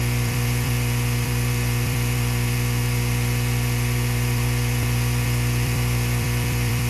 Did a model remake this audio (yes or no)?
yes